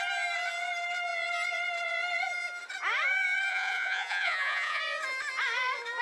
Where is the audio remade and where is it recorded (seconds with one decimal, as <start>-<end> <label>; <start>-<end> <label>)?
0.0-3.5 recorded; 3.5-4.8 remade; 4.8-6.0 recorded